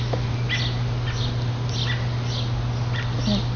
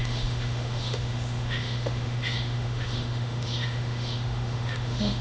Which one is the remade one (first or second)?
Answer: second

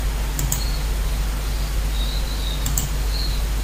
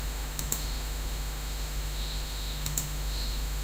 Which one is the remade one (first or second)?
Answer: second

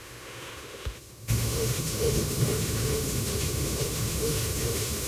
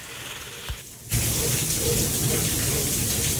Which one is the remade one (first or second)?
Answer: first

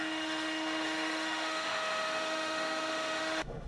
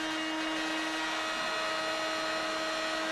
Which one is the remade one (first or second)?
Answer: first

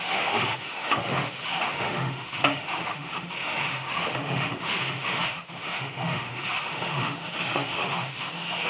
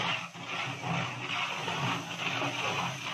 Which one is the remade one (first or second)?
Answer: first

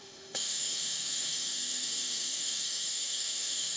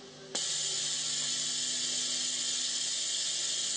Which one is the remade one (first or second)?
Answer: first